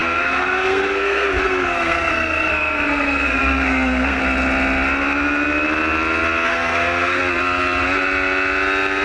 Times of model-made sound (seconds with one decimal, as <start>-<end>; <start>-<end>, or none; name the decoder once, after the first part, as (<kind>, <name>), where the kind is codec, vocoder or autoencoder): 0.0-4.2 (codec, SNAC); 6.5-7.2